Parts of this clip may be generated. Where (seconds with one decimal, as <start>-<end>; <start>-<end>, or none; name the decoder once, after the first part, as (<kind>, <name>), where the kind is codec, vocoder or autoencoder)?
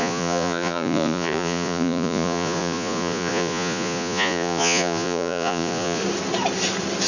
0.0-6.0 (vocoder, Vocos)